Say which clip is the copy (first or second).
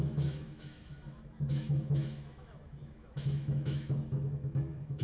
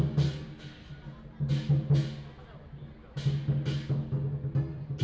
first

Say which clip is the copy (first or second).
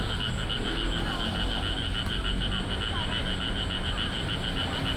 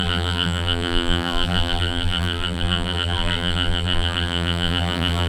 second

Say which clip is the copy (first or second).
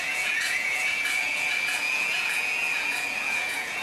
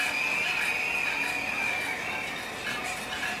first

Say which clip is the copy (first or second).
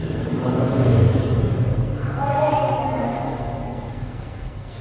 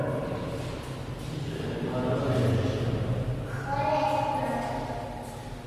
first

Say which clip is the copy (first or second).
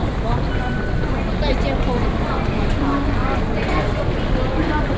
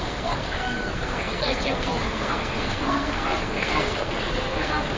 second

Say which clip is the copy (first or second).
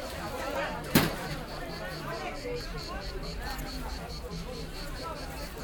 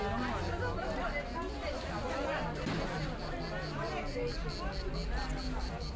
first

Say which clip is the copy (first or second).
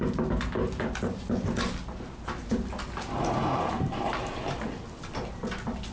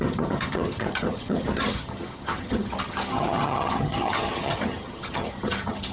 second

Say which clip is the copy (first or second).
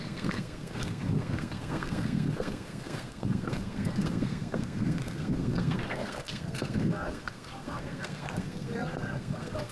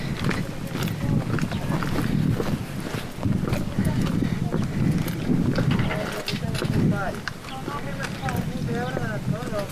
first